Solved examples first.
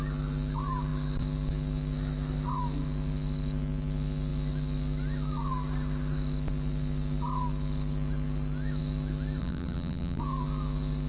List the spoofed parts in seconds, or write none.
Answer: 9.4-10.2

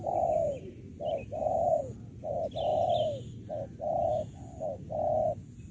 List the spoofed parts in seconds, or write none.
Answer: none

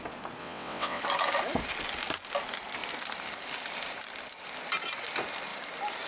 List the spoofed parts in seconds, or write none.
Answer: 0.4-1.0

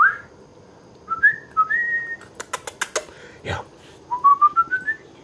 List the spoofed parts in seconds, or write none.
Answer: none

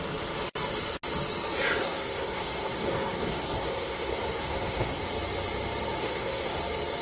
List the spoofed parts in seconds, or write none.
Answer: 1.8-5.0; 6.0-6.6